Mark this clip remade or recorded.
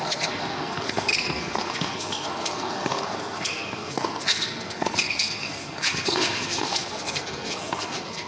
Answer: remade